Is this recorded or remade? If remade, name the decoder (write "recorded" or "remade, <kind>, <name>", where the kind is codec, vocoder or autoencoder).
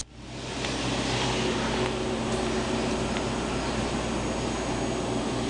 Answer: recorded